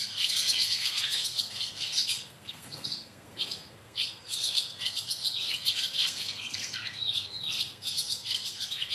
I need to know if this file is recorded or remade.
remade